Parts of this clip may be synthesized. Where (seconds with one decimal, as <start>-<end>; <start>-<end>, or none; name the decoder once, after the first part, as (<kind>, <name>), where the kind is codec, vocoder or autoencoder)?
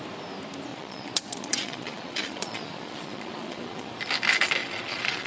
0.7-3.9 (vocoder, Vocos); 4.6-5.3